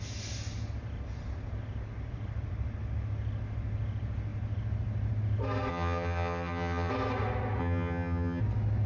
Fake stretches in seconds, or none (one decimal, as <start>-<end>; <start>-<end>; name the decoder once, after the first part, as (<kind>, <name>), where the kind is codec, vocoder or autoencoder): 5.7-6.9 (vocoder, HiFi-GAN); 7.6-8.4